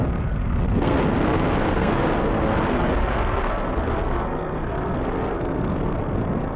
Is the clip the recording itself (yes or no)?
no